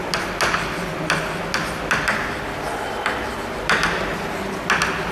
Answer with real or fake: real